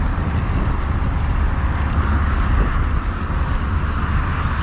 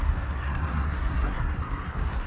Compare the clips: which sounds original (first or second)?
first